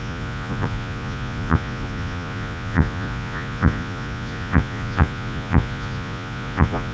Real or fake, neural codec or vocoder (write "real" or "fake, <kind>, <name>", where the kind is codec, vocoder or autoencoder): fake, vocoder, Vocos